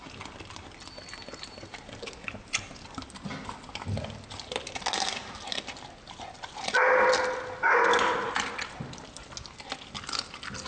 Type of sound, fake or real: real